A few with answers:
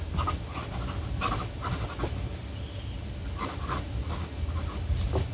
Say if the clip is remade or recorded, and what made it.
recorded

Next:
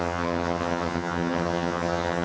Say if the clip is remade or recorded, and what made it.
remade, vocoder, HiFi-GAN